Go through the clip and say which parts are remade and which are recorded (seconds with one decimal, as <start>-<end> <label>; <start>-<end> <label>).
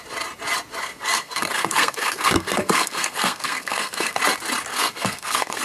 0.0-0.8 recorded; 0.8-4.2 remade; 4.2-4.7 recorded; 4.7-5.6 remade